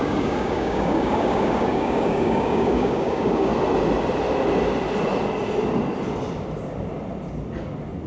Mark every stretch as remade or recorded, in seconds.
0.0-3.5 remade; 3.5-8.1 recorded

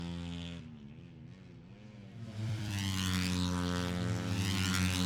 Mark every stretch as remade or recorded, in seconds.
0.0-2.0 recorded; 2.0-2.7 remade; 2.7-5.1 recorded

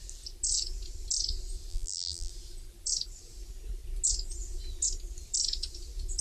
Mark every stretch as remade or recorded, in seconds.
0.0-1.7 recorded; 1.7-2.3 remade; 2.3-6.2 recorded